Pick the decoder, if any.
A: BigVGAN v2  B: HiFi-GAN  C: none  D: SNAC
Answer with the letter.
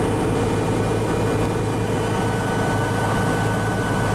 C